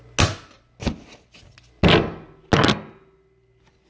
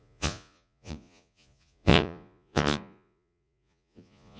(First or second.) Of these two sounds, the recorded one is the first